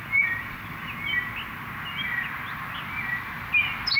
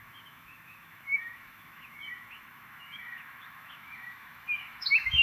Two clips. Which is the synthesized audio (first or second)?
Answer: second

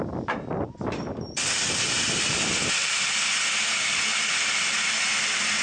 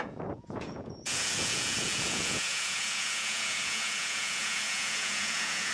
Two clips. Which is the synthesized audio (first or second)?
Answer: second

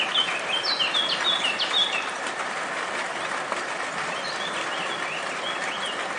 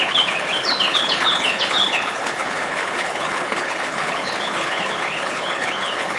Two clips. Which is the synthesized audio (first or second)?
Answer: second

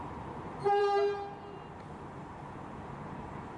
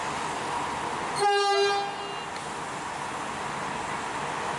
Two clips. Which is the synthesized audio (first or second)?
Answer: first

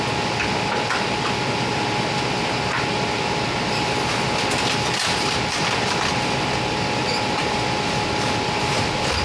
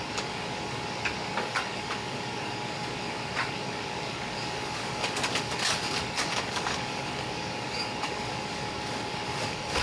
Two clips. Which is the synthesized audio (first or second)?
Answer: second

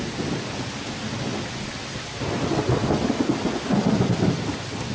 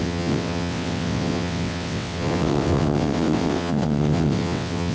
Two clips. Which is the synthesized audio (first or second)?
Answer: second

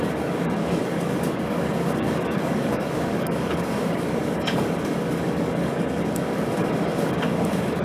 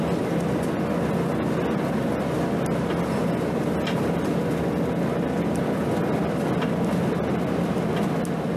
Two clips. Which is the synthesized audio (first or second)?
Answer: first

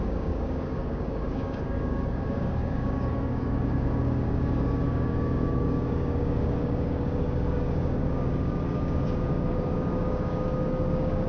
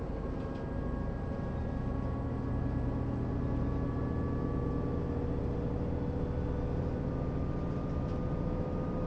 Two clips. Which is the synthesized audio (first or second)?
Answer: first